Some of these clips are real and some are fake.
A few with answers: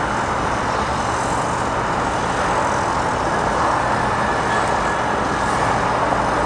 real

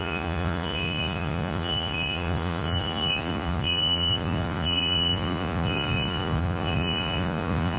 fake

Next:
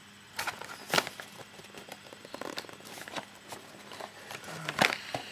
real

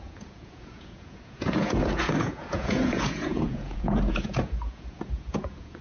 fake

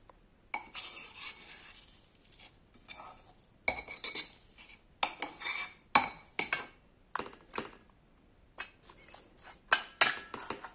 real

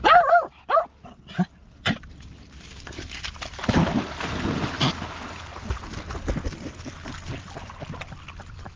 real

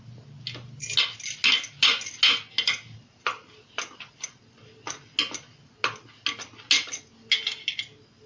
real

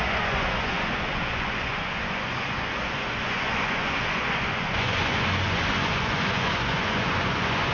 fake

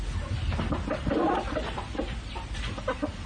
real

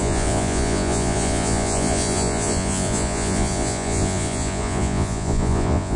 fake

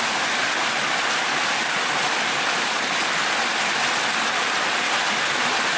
real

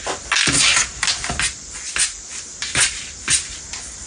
real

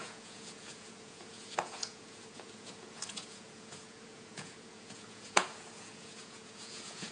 fake